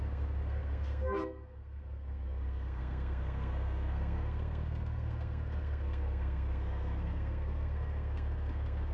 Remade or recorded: remade